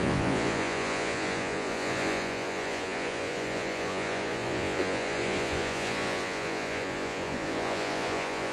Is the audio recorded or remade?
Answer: remade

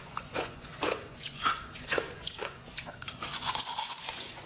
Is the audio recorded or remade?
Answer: remade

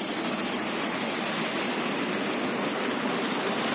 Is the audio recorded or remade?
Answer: recorded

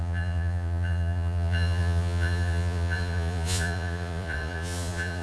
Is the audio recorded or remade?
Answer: remade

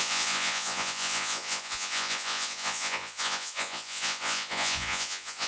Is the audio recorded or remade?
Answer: remade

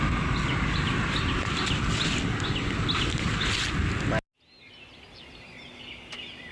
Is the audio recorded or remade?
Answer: recorded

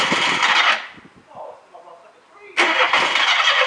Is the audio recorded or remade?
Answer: recorded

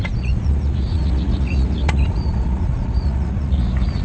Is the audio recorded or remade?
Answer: remade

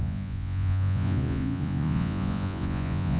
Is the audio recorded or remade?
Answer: remade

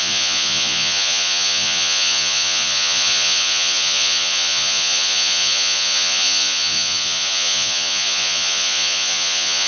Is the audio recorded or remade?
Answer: remade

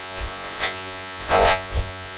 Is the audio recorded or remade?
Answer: remade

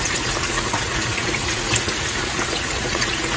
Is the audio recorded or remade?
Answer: remade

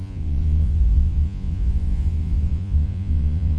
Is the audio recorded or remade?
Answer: remade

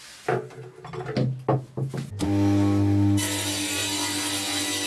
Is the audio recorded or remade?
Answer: recorded